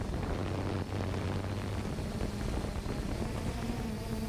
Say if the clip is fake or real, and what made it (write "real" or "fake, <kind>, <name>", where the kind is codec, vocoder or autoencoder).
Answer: real